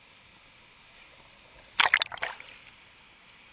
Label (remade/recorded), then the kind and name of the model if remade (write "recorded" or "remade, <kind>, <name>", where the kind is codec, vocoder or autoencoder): recorded